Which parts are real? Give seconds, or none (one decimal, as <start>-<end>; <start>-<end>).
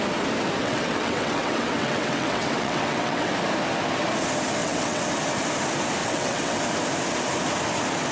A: 0.0-0.6; 3.3-4.6; 5.1-6.0; 6.6-8.1